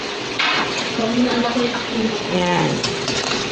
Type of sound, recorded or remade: remade